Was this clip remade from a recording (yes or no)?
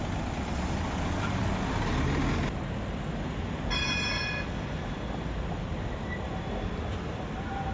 no